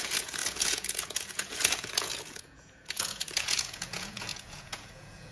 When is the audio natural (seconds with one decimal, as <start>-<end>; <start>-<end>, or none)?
none